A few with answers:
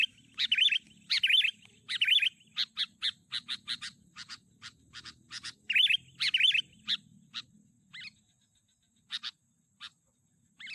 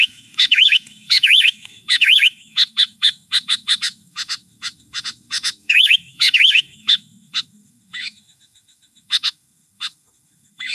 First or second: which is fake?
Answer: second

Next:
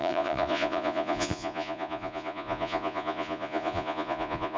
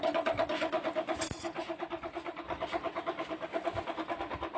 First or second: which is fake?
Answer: first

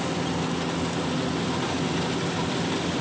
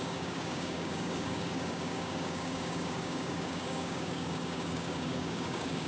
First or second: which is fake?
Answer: second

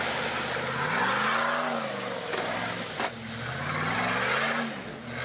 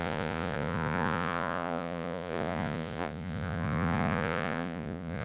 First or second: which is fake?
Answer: second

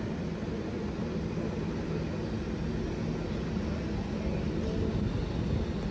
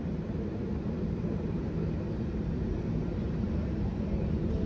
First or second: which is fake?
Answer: second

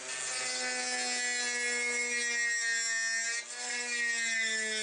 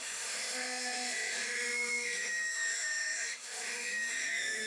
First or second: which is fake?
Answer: second